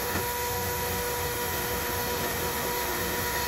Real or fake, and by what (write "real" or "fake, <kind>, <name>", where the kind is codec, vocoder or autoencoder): fake, autoencoder, DAC-VAE